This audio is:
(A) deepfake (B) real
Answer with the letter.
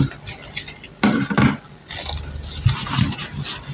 B